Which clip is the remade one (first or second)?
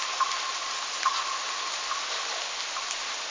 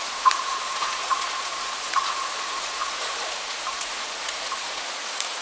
second